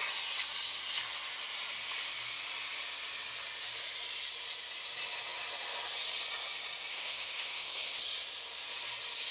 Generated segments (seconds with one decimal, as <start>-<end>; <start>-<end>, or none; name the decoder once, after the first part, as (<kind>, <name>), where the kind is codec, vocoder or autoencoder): 6.9-8.0 (codec, SNAC)